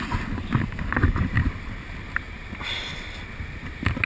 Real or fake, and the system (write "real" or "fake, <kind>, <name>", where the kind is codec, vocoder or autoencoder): real